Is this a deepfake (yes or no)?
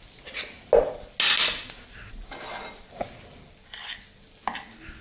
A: no